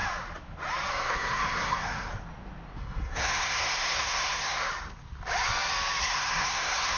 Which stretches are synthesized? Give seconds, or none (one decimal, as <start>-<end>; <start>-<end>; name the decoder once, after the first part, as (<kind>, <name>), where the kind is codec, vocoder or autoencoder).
0.9-2.1 (codec, SNAC); 2.8-4.7; 6.0-7.0

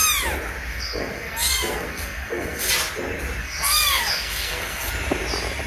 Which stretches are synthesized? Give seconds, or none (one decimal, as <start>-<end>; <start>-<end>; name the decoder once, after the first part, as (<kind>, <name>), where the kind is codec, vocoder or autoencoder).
0.7-2.7 (codec, SNAC); 3.4-4.9

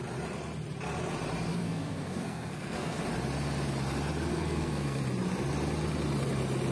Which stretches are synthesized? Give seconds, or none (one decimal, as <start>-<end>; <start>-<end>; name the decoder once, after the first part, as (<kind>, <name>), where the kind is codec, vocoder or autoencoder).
1.5-3.0 (codec, SNAC); 4.3-5.0